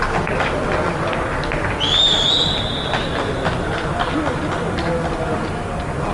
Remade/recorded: recorded